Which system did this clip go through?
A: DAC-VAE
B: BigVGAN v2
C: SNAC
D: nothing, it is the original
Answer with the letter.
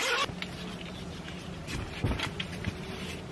D